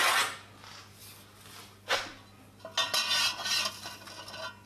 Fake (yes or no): no